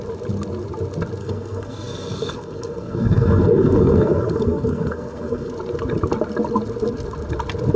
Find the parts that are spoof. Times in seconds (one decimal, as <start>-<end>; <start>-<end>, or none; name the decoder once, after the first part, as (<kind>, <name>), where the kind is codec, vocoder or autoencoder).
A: 1.2-5.5 (codec, SNAC)